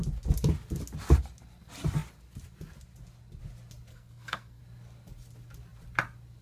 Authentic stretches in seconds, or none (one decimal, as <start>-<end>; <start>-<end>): 0.0-3.9; 4.6-6.4

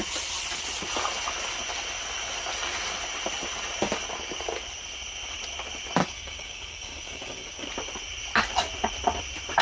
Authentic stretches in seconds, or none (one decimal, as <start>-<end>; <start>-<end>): 0.0-6.0; 7.7-9.6

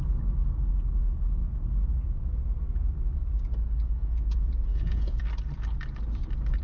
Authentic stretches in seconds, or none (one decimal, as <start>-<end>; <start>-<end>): 0.0-4.0; 5.2-6.6

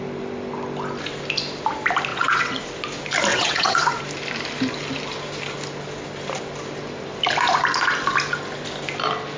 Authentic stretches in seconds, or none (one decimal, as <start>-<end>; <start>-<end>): 0.0-2.1; 2.6-3.3; 4.0-9.4

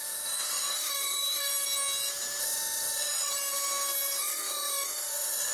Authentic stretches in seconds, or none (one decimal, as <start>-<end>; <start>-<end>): 1.5-2.4; 3.3-4.2

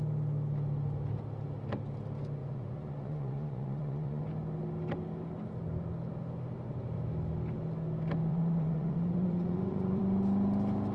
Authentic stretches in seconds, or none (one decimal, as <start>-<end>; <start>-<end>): 0.0-2.4; 4.2-8.3; 10.0-10.9

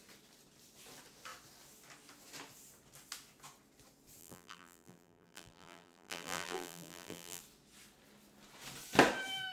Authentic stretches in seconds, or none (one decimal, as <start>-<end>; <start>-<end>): 0.0-4.2; 7.4-9.5

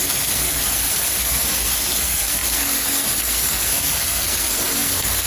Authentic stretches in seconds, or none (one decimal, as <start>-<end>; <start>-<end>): none